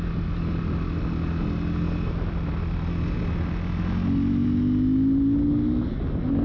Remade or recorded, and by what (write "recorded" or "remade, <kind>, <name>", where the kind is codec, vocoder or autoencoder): recorded